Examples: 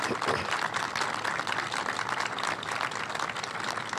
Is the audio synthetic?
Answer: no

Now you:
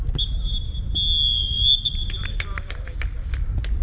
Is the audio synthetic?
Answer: no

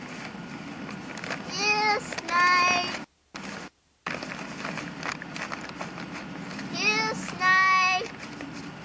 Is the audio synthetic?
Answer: no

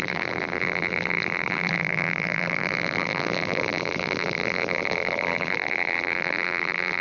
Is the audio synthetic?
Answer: yes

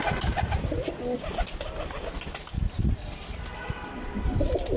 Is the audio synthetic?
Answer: no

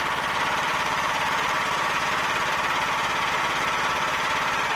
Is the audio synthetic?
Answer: yes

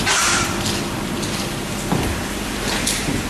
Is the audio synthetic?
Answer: yes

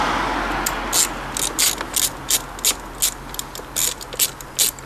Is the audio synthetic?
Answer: no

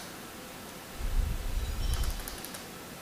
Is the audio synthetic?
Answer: no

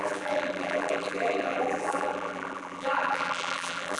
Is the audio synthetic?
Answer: yes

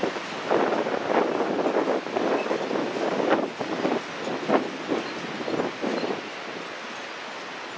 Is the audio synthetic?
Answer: no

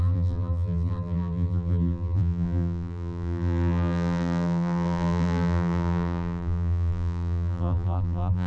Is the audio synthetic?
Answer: yes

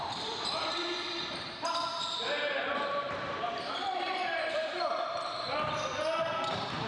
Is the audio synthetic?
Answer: yes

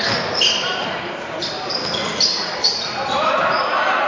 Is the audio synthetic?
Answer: yes